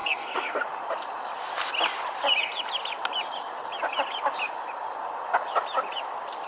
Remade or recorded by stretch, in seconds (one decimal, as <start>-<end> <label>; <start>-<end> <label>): 0.0-0.6 remade; 0.6-6.5 recorded